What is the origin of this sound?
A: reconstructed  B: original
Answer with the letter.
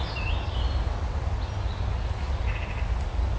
B